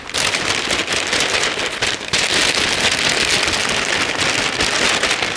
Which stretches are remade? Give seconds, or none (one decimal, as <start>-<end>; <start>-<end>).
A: none